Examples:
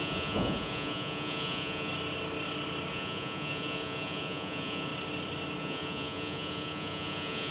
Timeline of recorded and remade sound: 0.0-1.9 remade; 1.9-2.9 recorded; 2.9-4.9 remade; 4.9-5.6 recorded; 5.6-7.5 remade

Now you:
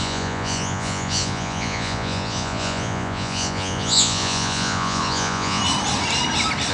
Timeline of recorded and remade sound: 0.0-5.6 remade; 5.6-6.7 recorded

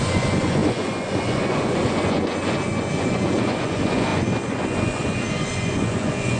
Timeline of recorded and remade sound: 0.0-6.4 remade

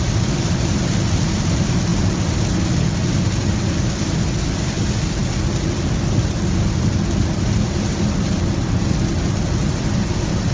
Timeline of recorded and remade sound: 0.0-10.5 recorded

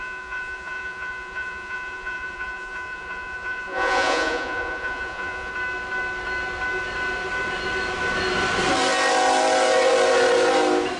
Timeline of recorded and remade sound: 0.0-5.5 remade; 5.5-11.0 recorded

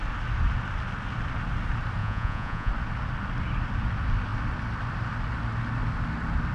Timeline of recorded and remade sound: 0.0-2.0 recorded; 2.0-2.7 remade; 2.7-6.5 recorded

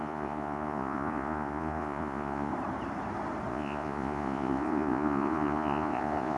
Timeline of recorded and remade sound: 0.0-2.5 remade; 2.5-3.5 recorded; 3.5-6.4 remade